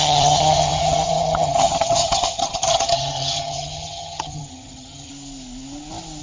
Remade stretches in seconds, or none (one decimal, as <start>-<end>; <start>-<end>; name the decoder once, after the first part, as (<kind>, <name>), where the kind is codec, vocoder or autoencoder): 0.0-5.1 (vocoder, HiFi-GAN)